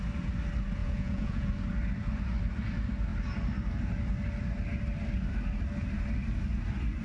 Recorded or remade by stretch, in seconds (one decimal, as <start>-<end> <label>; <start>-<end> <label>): 0.0-0.8 recorded; 0.8-1.5 remade; 1.5-7.0 recorded